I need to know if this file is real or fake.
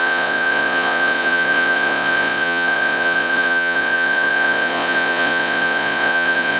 fake